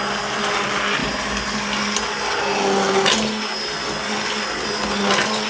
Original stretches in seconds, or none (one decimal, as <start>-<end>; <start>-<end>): 0.0-5.5